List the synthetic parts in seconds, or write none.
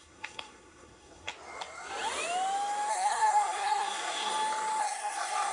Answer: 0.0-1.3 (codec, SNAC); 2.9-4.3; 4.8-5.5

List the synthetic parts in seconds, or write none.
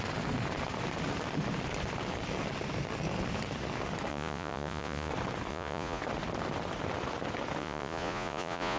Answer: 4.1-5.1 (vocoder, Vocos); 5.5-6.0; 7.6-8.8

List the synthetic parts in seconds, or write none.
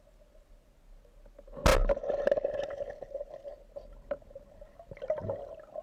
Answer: none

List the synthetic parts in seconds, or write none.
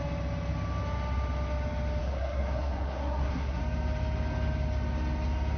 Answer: 2.0-3.6 (codec, SNAC)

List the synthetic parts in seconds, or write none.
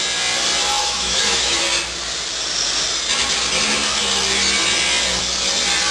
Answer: 0.8-1.6 (autoencoder, DAC-VAE)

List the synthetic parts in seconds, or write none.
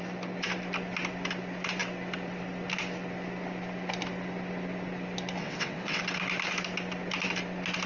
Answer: 5.4-6.0 (vocoder, WaveNeXt)